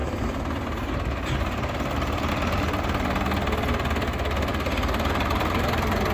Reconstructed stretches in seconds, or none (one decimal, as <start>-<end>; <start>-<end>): none